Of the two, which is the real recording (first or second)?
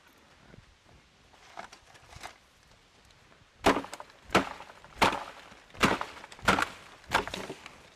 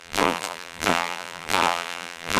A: first